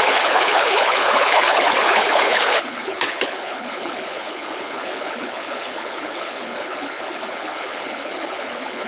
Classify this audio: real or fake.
fake